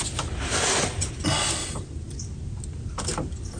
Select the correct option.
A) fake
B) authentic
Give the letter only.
B